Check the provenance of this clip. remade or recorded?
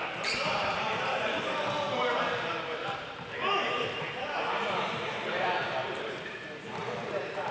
remade